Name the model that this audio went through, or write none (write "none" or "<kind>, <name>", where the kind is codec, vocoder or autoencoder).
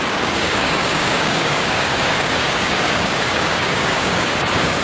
codec, DAC